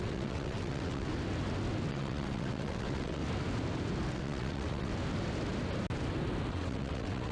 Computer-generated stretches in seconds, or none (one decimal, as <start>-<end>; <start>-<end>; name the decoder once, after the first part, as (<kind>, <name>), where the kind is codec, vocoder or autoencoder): 0.0-1.1 (vocoder, WaveNeXt); 1.9-3.2; 4.1-4.9; 6.5-7.3

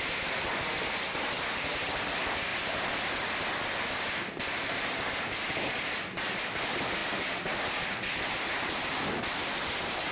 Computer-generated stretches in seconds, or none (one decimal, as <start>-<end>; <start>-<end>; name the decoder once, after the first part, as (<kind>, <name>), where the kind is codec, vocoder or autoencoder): none

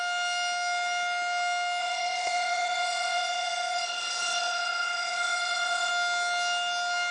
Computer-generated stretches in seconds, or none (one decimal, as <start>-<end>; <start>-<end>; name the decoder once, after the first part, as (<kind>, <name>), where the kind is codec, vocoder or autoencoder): 1.8-5.9 (vocoder, WaveNeXt)